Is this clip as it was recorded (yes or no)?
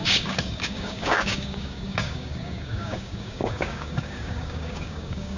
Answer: no